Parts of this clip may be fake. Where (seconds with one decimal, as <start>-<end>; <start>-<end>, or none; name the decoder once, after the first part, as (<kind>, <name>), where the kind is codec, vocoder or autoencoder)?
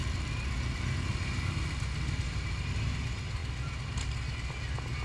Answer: none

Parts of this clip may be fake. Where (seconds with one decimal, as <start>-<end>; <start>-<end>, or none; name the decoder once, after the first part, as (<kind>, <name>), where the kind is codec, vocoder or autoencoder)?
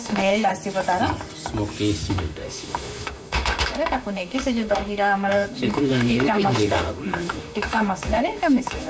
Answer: 0.0-0.5 (autoencoder, DAC-VAE); 2.1-8.9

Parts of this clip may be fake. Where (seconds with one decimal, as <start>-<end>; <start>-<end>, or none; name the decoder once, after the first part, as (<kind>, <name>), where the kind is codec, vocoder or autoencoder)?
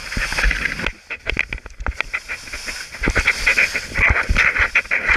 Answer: none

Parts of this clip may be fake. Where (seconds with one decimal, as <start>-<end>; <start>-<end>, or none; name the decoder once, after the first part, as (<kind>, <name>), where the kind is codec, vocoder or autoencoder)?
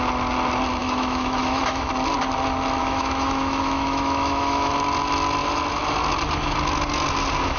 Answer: 0.8-1.9 (autoencoder, DAC-VAE); 2.8-4.7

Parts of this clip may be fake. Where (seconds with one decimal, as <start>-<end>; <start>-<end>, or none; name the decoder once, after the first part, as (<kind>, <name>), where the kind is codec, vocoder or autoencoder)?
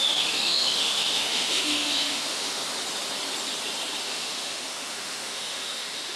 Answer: 0.0-2.6 (autoencoder, DAC-VAE); 4.0-6.2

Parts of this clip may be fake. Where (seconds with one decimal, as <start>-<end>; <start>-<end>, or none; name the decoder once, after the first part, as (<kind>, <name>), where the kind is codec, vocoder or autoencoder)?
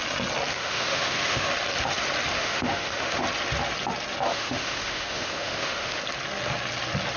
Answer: 0.5-1.5 (autoencoder, DAC-VAE); 2.3-3.2; 4.3-6.0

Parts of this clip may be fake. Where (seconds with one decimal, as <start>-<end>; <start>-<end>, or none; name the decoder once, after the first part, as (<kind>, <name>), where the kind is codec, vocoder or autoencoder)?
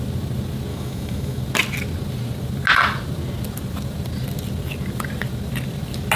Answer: 0.7-1.4 (autoencoder, DAC-VAE)